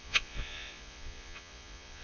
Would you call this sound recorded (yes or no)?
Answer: no